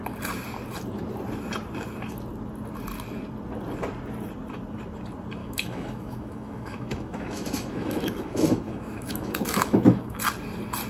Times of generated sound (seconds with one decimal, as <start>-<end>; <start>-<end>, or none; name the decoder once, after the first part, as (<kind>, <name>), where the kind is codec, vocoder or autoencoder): 5.4-10.2 (autoencoder, DAC-VAE)